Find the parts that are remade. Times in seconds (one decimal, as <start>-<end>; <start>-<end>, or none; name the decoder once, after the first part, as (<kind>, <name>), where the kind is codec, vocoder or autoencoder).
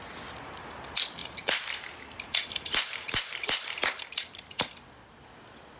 1.2-4.7 (vocoder, BigVGAN v2)